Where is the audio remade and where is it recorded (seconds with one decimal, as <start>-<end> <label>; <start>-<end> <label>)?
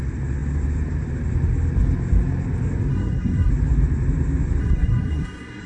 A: 0.0-2.9 recorded; 2.9-3.5 remade; 3.5-4.6 recorded; 4.6-5.7 remade